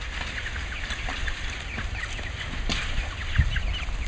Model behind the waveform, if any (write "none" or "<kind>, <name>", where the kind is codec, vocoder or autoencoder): none